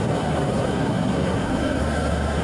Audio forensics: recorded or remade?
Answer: remade